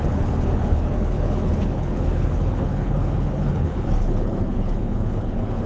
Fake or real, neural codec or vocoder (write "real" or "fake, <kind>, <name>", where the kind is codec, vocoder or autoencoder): fake, codec, HILCodec